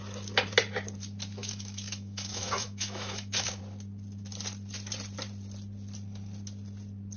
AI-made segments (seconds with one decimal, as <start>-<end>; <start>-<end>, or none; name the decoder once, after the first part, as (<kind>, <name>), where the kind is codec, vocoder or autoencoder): 1.4-3.6 (autoencoder, DAC-VAE)